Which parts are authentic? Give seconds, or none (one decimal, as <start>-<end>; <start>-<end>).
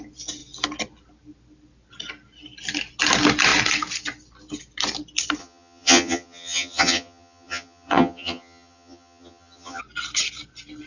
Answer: 0.0-5.4; 9.8-10.9